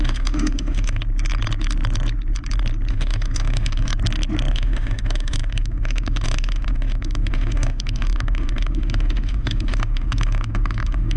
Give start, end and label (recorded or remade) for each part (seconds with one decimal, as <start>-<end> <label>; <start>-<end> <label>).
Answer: 0.0-1.0 remade; 1.0-2.9 recorded; 2.9-3.9 remade; 3.9-4.5 recorded; 4.5-11.2 remade

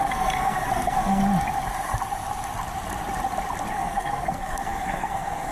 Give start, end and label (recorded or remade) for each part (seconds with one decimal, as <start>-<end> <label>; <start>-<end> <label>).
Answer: 0.0-1.2 remade; 1.2-3.7 recorded; 3.7-5.5 remade

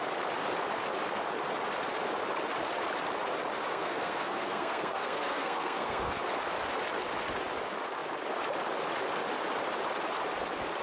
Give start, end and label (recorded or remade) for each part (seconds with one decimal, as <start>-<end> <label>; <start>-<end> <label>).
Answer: 0.0-3.7 recorded; 3.7-6.1 remade; 6.1-10.8 recorded

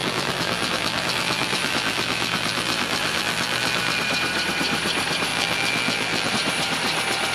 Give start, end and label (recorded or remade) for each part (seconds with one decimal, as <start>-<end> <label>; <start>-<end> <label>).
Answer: 0.0-4.0 remade; 4.0-5.3 recorded; 5.3-6.3 remade; 6.3-7.3 recorded

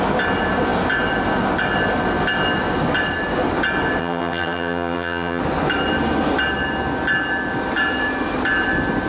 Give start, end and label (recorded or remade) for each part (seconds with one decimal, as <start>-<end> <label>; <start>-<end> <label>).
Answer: 0.0-4.0 recorded; 4.0-5.4 remade; 5.4-9.1 recorded